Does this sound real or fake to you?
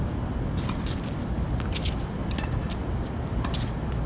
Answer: real